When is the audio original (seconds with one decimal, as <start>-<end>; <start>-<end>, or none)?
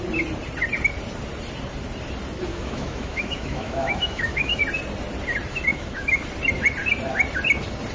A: 0.0-2.5; 4.6-5.7; 6.2-7.9